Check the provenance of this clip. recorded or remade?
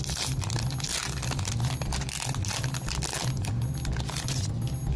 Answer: recorded